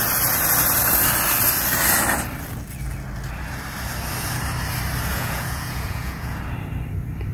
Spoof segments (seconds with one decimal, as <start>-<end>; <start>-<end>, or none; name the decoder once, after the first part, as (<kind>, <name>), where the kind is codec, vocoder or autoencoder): 5.1-6.4 (vocoder, Vocos)